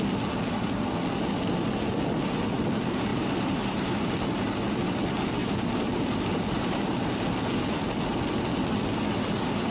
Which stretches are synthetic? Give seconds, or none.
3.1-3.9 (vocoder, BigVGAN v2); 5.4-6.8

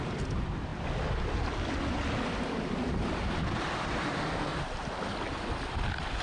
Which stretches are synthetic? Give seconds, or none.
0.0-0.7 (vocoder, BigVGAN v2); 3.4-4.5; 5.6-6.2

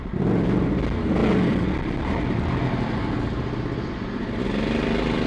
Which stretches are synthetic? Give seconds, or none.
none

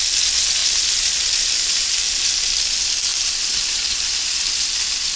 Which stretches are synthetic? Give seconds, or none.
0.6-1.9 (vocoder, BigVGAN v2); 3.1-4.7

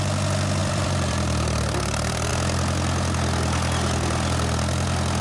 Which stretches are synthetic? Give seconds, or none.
0.6-2.3 (vocoder, BigVGAN v2)

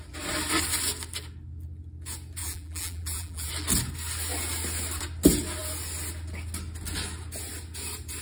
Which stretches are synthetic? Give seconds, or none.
2.4-3.5 (vocoder, BigVGAN v2)